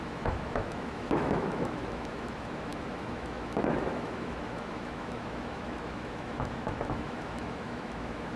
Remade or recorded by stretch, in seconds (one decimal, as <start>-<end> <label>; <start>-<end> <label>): 0.0-8.4 remade